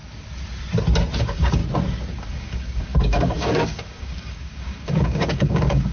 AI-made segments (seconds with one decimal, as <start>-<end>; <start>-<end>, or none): 1.2-1.6; 2.3-5.9